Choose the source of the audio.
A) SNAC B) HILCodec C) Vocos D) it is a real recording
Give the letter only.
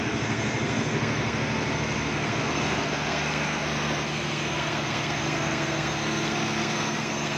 A